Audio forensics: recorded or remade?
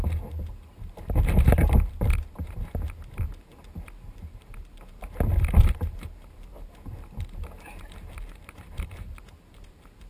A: recorded